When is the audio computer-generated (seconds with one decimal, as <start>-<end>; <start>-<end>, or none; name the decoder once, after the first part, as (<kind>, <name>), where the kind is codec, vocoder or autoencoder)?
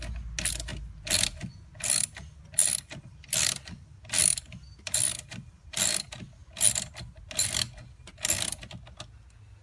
none